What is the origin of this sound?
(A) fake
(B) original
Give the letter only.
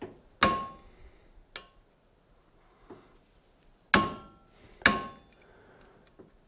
B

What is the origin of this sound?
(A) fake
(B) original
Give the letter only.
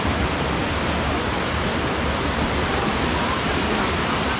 B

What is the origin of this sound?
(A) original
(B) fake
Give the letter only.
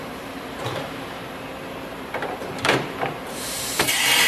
B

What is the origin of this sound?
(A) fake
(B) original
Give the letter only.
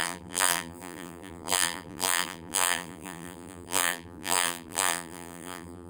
A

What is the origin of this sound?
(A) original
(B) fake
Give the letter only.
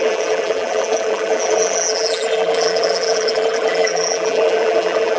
B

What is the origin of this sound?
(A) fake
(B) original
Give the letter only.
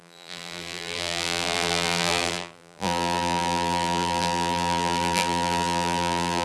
A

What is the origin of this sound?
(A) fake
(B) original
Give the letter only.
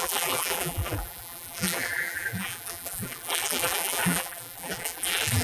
A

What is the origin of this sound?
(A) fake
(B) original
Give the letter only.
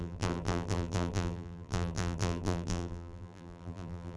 A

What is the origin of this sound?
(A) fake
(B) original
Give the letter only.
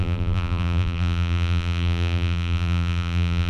A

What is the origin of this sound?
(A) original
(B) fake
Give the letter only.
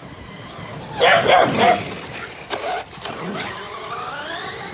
A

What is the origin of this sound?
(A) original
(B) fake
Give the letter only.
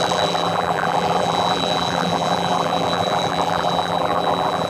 B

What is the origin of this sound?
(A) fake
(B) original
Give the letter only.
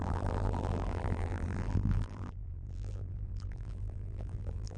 A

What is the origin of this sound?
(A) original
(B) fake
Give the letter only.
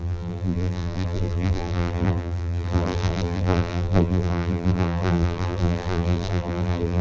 B